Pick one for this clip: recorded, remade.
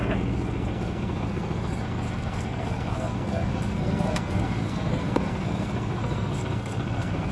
remade